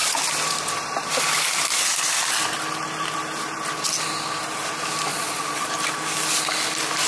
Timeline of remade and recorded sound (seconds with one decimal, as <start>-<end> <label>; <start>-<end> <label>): 0.0-5.1 recorded; 5.1-5.7 remade; 5.7-7.1 recorded

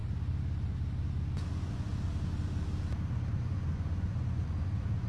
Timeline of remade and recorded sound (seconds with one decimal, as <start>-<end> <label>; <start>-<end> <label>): 0.0-1.5 recorded; 1.5-1.9 remade; 1.9-3.3 recorded; 3.3-5.1 remade

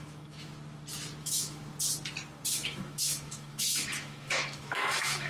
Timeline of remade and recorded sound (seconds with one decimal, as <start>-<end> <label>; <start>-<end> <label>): 0.0-0.5 remade; 0.5-1.2 recorded; 1.2-1.6 remade; 1.6-2.5 recorded; 2.5-5.3 remade

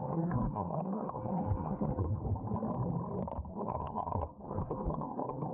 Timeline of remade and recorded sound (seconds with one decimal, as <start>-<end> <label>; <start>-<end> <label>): 0.0-2.2 remade; 2.2-3.5 recorded; 3.5-5.5 remade

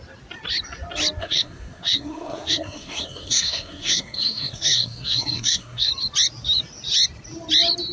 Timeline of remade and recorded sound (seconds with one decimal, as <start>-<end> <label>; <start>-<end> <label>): 0.0-1.2 recorded; 1.2-5.9 remade; 5.9-7.9 recorded

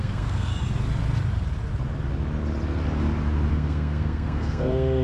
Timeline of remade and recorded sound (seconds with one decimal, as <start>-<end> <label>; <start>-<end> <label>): 0.0-0.5 remade; 0.5-3.5 recorded; 3.5-5.0 remade

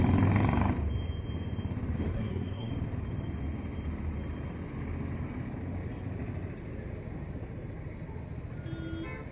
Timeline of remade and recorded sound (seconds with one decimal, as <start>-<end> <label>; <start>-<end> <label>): 0.0-2.1 recorded; 2.1-2.7 remade; 2.7-9.3 recorded

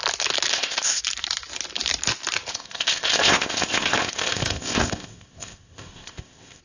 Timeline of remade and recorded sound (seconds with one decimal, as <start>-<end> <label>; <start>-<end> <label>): 0.0-0.5 recorded; 0.5-1.0 remade; 1.0-2.5 recorded; 2.5-6.6 remade